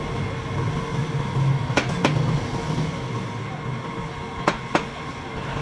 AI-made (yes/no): no